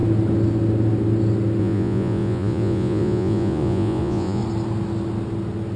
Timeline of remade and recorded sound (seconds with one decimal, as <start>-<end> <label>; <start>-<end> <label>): 0.0-1.6 recorded; 1.6-4.4 remade; 4.4-5.8 recorded